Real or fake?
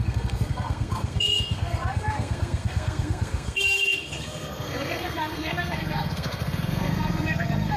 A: fake